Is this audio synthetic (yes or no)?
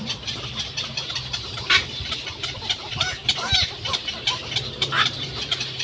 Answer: yes